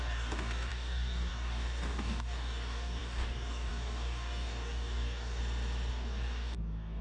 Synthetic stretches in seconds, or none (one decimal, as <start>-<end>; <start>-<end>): 0.0-5.4; 5.9-7.0